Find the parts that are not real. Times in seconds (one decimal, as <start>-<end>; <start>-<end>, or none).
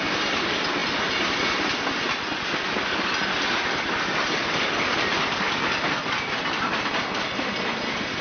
none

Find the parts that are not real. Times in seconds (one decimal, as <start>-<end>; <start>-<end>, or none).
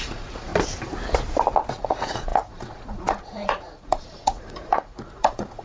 0.0-0.5; 1.7-5.6